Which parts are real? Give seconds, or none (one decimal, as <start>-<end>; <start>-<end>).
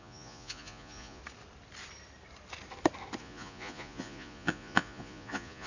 1.2-3.2